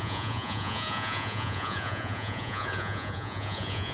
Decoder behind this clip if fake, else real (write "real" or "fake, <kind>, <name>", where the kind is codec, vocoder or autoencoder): fake, vocoder, Vocos